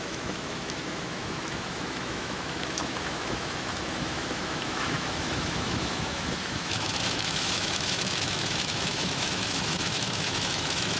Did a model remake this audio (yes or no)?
yes